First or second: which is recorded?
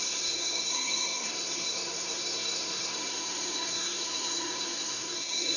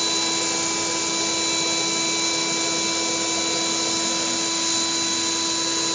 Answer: second